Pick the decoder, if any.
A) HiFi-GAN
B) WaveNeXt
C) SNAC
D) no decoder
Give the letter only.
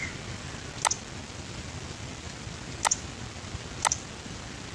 D